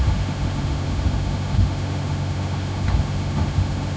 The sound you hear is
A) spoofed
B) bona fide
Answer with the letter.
A